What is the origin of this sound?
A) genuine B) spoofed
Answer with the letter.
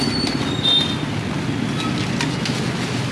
A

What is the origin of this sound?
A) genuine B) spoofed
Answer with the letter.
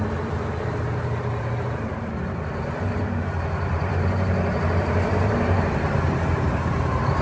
B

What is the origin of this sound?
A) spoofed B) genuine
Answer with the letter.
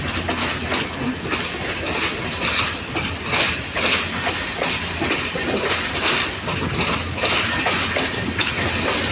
B